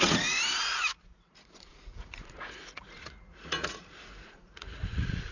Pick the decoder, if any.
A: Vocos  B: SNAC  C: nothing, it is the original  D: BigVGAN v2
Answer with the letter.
A